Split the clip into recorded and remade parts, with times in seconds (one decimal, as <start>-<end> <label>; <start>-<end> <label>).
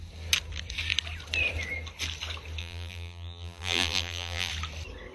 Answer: 0.0-2.6 recorded; 2.6-4.5 remade; 4.5-5.1 recorded